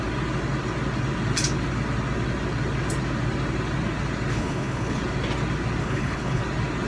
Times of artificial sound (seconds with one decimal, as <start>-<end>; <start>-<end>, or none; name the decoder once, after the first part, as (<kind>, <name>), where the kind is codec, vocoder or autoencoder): 4.3-5.0 (codec, HILCodec); 5.8-6.4